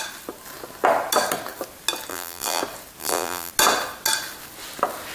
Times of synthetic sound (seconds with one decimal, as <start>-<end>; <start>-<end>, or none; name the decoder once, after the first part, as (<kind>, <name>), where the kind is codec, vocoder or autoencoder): 2.1-2.6 (vocoder, BigVGAN v2); 3.0-3.5